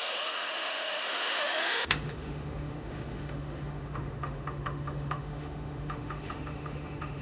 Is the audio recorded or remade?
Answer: remade